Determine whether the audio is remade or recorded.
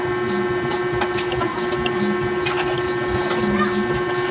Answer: recorded